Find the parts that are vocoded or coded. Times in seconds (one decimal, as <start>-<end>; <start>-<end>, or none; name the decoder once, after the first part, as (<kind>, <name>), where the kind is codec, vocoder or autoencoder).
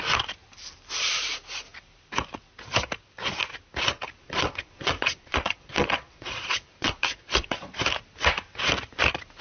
4.2-7.8 (vocoder, Vocos)